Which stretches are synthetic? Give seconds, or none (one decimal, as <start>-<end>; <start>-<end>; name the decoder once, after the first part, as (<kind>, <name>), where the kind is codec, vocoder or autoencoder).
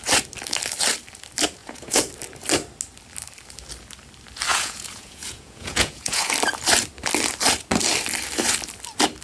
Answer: 1.6-2.1 (vocoder, Vocos); 4.5-6.3